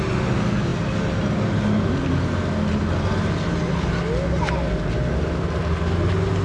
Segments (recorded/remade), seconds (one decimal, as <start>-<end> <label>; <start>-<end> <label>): 0.0-6.4 recorded